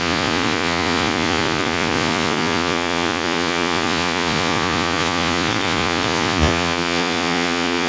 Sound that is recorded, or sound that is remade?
remade